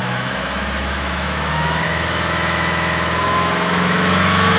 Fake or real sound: fake